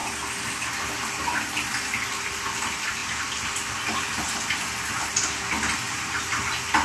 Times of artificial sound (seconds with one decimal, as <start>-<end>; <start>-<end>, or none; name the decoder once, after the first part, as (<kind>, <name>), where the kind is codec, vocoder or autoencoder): none